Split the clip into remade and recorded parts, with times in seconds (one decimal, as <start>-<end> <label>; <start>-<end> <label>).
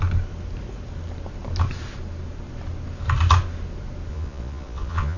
0.0-4.1 recorded; 4.1-5.2 remade